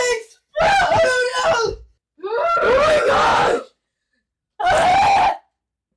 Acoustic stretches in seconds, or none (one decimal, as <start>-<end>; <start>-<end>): 0.0-3.3; 4.6-6.0